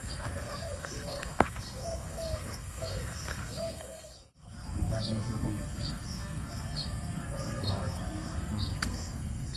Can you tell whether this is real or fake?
fake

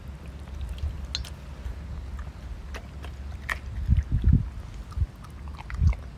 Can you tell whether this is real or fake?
real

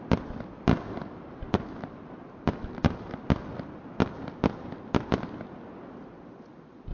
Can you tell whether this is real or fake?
real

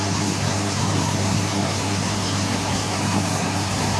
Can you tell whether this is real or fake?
fake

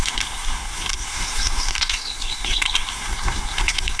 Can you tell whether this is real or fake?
fake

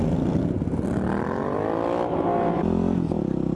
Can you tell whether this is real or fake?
real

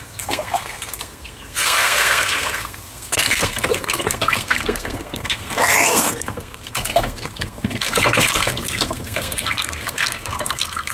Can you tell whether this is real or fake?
fake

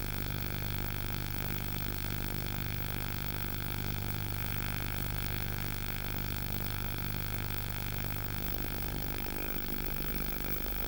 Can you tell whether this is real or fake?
fake